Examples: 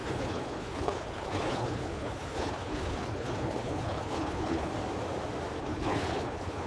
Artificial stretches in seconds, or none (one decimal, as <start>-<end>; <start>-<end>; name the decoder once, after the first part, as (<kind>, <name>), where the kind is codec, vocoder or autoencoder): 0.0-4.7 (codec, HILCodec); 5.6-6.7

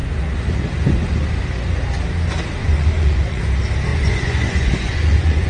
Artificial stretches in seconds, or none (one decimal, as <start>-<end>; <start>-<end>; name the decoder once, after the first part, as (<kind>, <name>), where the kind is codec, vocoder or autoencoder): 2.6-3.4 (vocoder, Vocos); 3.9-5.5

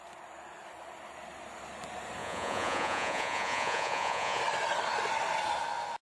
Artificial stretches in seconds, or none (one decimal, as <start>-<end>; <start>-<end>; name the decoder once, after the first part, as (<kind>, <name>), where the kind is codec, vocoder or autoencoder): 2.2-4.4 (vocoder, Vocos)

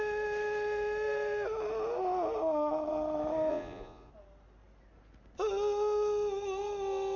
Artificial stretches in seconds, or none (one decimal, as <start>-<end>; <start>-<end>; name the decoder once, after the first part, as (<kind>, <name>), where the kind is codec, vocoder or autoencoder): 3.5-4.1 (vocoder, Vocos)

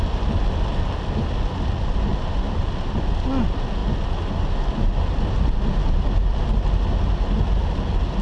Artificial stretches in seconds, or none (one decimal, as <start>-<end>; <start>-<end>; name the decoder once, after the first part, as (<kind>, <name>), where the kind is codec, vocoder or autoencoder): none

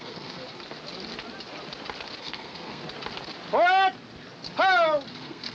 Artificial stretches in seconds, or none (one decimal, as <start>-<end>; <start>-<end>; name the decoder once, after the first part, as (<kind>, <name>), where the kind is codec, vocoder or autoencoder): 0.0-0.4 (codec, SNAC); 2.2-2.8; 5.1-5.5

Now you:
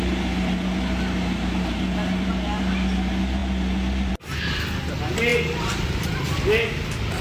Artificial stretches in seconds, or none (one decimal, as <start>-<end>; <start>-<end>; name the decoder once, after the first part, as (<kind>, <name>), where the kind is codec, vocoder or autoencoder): none

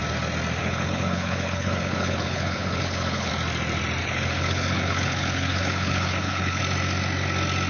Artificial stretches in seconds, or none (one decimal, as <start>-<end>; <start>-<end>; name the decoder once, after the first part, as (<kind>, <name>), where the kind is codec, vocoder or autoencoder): 0.6-3.3 (codec, HILCodec); 4.0-6.6